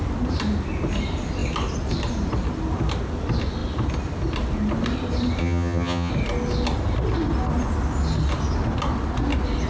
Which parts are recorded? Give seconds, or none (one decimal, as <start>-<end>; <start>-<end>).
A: 0.0-5.4; 6.1-9.7